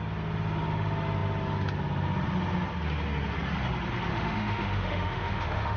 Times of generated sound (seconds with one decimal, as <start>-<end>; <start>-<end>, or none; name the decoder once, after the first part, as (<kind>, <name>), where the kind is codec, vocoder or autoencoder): 4.1-5.8 (autoencoder, DAC-VAE)